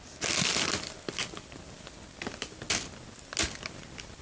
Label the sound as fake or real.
real